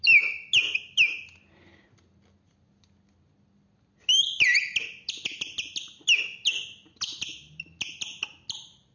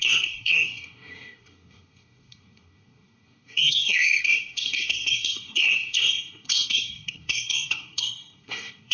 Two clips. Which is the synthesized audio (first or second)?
second